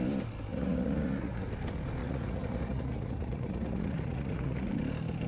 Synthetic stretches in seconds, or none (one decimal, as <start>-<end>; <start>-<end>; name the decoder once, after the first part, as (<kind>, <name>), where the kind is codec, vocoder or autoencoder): 0.5-1.5 (vocoder, Vocos); 2.0-4.7